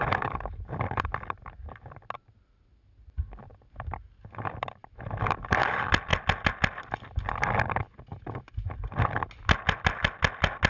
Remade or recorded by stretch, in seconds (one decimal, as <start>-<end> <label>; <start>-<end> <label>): 0.0-10.7 recorded